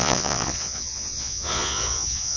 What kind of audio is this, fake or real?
fake